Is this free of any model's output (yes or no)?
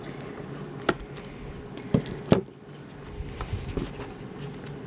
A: yes